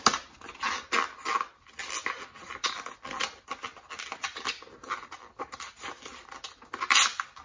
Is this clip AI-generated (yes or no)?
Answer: no